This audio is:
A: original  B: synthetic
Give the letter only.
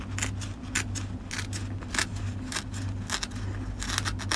A